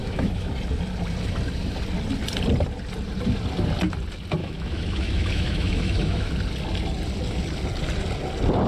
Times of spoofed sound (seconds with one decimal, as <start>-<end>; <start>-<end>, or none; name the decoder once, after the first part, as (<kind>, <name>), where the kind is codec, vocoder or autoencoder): 0.0-0.5 (autoencoder, DAC-VAE); 4.4-6.3